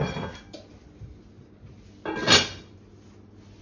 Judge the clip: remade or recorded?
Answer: recorded